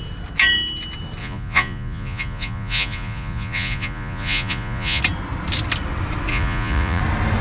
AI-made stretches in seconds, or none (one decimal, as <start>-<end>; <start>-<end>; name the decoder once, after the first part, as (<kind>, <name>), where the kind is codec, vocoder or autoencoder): 1.2-5.0 (vocoder, Vocos); 6.3-7.0